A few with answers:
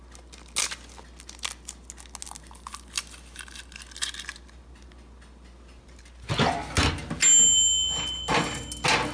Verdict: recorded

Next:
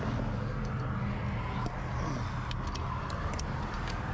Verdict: recorded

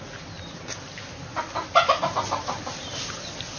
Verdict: recorded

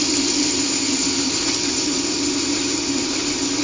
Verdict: remade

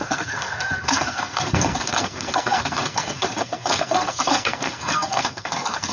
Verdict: remade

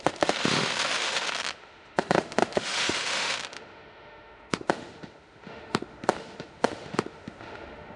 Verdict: remade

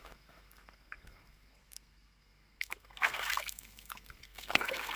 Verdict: remade